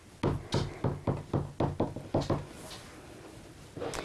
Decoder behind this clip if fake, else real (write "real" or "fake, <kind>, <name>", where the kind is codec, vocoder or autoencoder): real